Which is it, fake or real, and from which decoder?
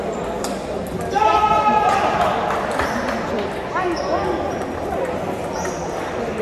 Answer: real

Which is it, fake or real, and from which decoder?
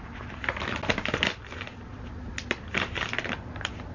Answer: real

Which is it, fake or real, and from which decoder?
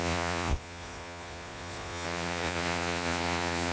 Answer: fake, vocoder, Vocos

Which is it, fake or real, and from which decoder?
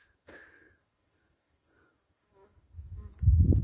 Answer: fake, autoencoder, DAC-VAE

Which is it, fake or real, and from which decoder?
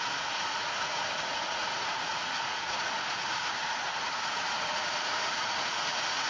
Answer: fake, vocoder, Vocos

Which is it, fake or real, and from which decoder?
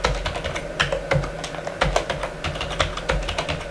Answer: real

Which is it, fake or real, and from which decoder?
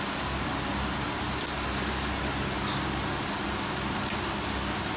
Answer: real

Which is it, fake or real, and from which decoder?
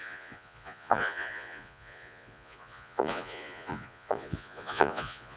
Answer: fake, vocoder, Vocos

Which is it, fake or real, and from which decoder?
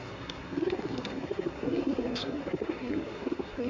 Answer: fake, codec, SNAC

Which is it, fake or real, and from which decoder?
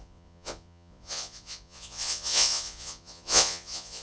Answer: fake, vocoder, Vocos